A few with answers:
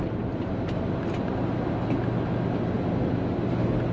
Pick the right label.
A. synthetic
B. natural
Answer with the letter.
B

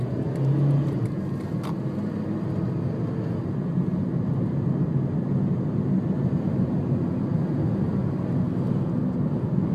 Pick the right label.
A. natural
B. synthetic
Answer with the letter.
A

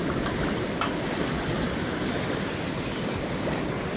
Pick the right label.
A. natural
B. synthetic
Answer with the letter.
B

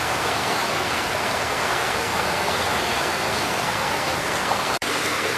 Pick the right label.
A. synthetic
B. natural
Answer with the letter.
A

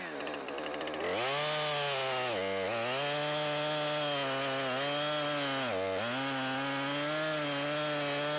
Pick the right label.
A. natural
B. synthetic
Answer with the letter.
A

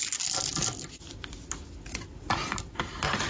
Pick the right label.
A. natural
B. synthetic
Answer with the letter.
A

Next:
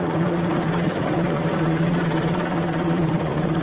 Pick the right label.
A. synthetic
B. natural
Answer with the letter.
A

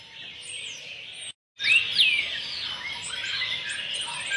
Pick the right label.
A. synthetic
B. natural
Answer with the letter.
B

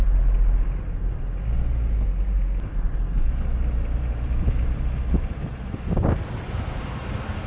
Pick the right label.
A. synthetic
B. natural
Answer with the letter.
B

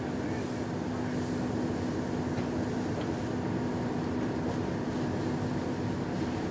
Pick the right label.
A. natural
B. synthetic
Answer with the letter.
A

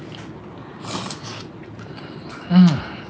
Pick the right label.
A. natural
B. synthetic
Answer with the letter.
A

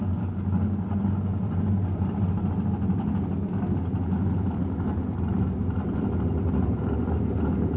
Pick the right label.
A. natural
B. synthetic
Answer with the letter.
A